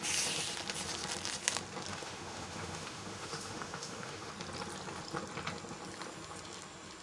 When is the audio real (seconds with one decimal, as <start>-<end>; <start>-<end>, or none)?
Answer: 0.0-1.9; 4.3-7.0